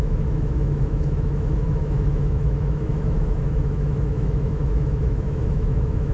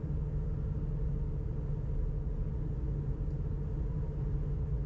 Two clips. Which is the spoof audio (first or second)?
first